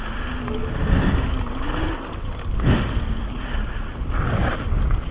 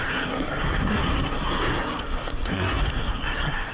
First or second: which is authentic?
first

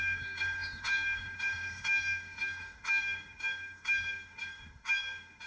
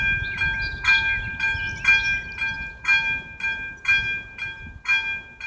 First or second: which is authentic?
second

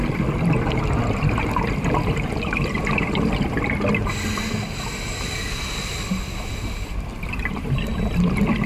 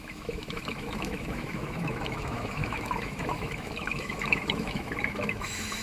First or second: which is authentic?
first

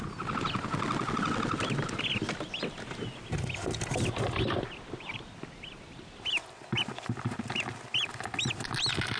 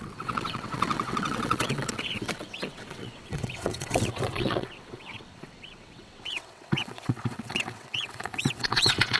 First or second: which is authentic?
first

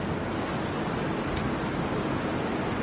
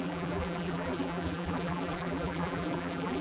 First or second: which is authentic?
first